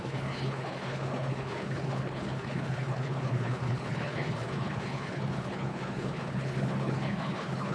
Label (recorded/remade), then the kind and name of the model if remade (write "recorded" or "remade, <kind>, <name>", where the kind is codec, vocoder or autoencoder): remade, codec, HILCodec